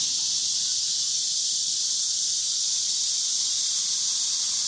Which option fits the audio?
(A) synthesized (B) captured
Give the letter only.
B